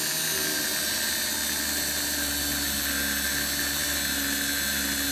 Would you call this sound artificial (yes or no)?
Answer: no